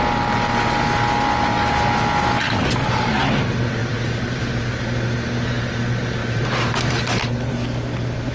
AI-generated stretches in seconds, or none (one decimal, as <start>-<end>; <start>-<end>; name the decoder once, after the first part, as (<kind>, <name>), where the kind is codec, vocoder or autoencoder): 3.8-4.6 (vocoder, BigVGAN v2); 6.2-6.9